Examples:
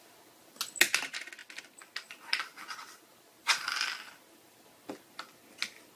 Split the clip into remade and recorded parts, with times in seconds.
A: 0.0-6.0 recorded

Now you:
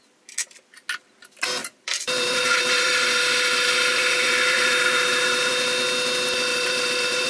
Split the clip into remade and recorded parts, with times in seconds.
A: 0.0-1.6 recorded; 1.6-5.5 remade; 5.5-6.5 recorded; 6.5-7.3 remade

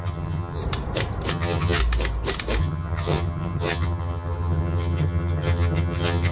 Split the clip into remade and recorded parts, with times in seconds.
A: 0.0-0.6 remade; 0.6-1.3 recorded; 1.3-1.8 remade; 1.8-2.6 recorded; 2.6-6.3 remade